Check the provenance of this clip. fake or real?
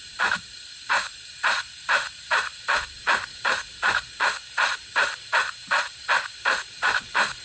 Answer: fake